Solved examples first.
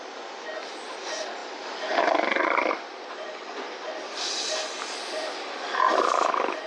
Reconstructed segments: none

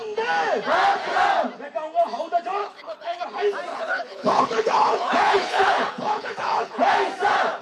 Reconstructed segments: 2.6-3.2; 3.7-6.9

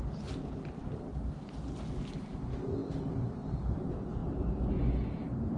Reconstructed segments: none

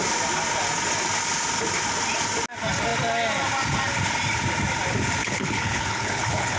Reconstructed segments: 5.2-6.6

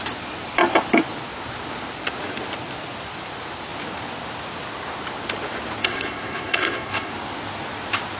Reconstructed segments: 5.8-7.1

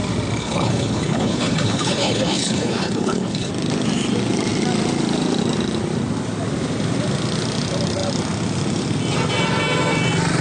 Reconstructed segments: 0.4-3.5

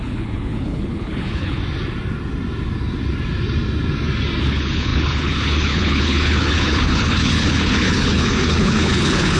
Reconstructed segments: 0.0-1.6; 4.4-9.4